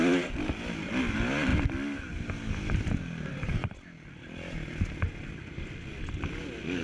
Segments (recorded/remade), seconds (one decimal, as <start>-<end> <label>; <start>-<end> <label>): 0.0-6.8 recorded

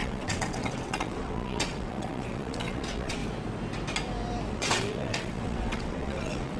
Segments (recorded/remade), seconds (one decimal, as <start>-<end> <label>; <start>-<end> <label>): 0.0-3.2 remade; 3.2-4.5 recorded; 4.5-6.6 remade

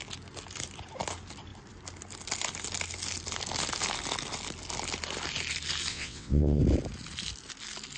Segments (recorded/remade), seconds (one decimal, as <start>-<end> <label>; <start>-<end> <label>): 0.0-5.9 recorded; 5.9-6.6 remade; 6.6-8.0 recorded